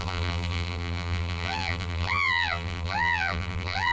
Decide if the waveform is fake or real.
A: fake